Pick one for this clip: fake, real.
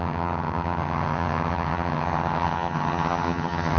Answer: fake